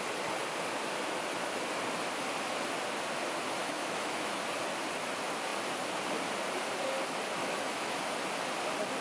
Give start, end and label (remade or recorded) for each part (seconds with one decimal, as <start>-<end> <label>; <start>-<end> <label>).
0.0-3.6 recorded; 3.6-4.4 remade; 4.4-7.4 recorded; 7.4-8.0 remade; 8.0-9.0 recorded